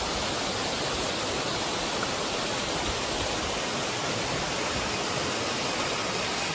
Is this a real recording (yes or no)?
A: yes